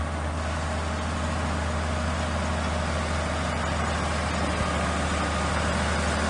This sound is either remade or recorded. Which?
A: recorded